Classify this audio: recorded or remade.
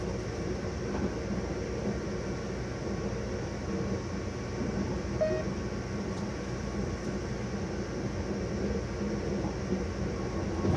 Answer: recorded